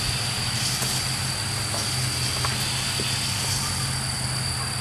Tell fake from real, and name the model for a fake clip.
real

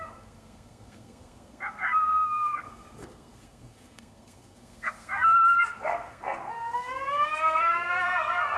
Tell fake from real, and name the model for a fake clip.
fake, codec, SNAC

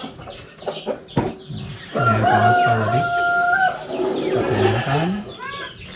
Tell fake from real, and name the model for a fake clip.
real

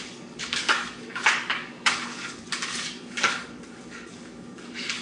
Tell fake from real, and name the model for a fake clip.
fake, codec, DAC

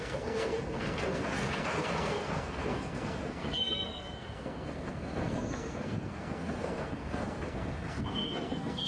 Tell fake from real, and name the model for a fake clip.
fake, codec, SNAC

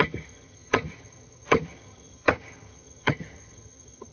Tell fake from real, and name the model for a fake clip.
fake, vocoder, HiFi-GAN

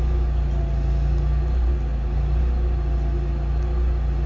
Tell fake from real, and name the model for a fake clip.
real